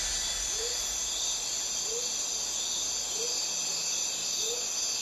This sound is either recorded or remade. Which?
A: recorded